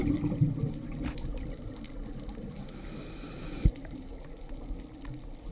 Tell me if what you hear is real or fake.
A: real